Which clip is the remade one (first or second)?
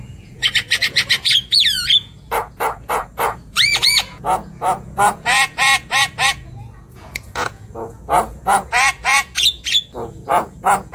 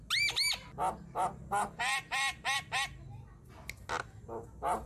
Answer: first